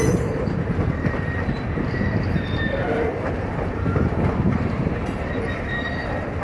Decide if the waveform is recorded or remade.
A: remade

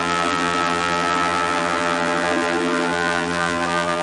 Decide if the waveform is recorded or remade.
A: remade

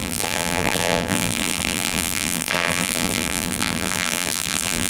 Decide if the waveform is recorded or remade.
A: remade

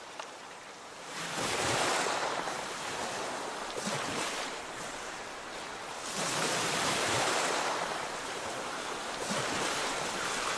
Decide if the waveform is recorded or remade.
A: remade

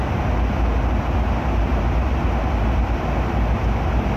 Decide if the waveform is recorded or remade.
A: recorded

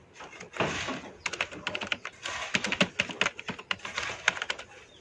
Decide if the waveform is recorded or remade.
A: recorded